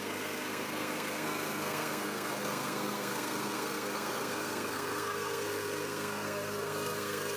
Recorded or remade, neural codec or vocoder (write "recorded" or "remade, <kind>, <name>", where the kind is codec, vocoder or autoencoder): remade, codec, SNAC